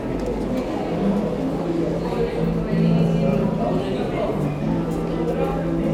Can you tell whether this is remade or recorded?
recorded